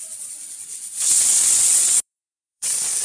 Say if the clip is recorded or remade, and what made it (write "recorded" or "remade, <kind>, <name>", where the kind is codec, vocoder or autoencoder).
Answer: remade, vocoder, WaveNeXt